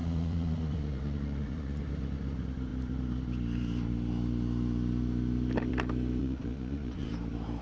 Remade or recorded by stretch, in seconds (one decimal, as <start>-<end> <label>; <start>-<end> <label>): 0.0-1.8 remade; 1.8-6.2 recorded; 6.2-7.1 remade; 7.1-7.6 recorded